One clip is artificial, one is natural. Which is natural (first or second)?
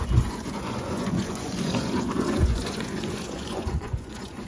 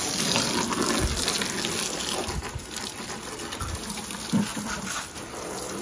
second